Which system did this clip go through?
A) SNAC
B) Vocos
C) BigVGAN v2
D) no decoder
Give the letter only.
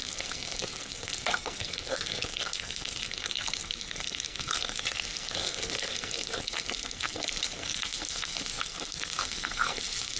A